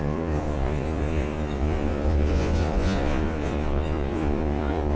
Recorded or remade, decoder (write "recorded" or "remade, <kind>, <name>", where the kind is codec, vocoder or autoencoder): remade, vocoder, Vocos